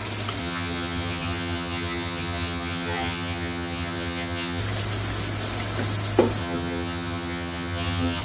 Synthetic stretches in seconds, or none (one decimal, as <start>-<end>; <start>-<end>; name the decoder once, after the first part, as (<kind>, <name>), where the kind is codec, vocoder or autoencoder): 0.4-4.6 (vocoder, HiFi-GAN); 6.4-8.2